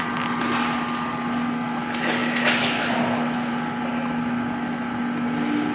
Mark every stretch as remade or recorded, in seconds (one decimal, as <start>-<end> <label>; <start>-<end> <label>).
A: 0.0-5.7 recorded